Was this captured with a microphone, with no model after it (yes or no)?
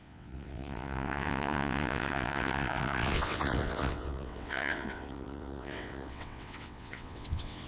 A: no